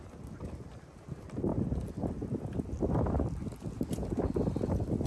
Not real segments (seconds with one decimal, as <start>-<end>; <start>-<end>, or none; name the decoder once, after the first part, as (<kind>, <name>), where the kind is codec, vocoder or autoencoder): none